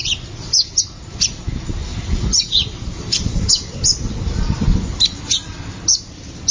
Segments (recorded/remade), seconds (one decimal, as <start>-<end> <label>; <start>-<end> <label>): 0.0-1.9 recorded; 1.9-3.5 remade; 3.5-6.5 recorded